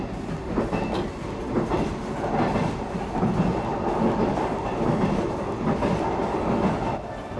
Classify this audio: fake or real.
real